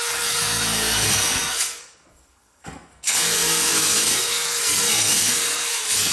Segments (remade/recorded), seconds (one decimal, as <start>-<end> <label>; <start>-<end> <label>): 0.0-6.1 remade